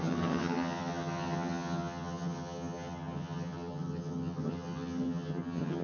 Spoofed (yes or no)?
yes